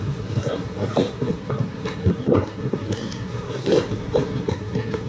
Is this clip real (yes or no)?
no